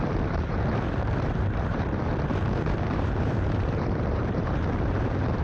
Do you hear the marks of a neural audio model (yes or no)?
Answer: yes